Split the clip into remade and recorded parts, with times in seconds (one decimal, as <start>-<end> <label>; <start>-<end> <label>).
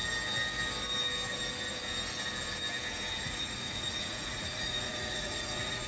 0.0-3.2 recorded; 3.2-5.9 remade